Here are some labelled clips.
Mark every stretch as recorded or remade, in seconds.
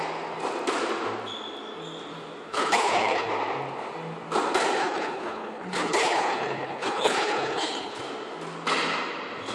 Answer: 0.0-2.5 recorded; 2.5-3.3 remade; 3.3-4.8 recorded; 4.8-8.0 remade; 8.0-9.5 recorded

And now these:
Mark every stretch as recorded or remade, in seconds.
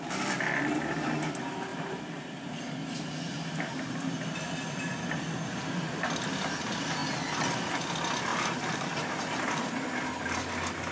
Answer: 0.0-1.7 recorded; 1.7-2.2 remade; 2.2-8.3 recorded; 8.3-9.7 remade; 9.7-10.9 recorded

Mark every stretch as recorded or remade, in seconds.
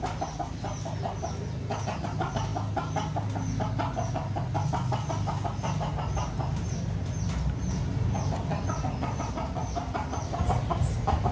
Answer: 0.0-9.6 recorded; 9.6-10.4 remade; 10.4-11.3 recorded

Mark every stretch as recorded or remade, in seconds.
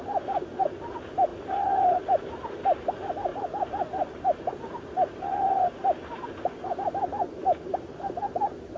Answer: 0.0-1.3 recorded; 1.3-2.0 remade; 2.0-8.8 recorded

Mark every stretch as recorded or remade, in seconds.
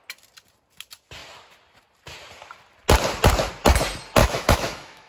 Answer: 0.0-4.2 recorded; 4.2-5.1 remade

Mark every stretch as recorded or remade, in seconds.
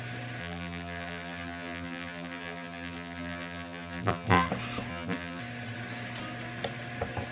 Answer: 0.0-0.4 recorded; 0.4-4.5 remade; 4.5-4.9 recorded; 4.9-5.4 remade; 5.4-7.3 recorded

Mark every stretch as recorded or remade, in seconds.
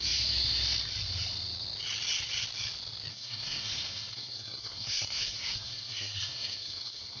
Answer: 0.0-3.1 recorded; 3.1-7.2 remade